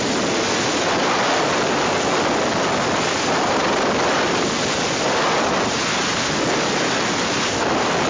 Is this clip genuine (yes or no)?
yes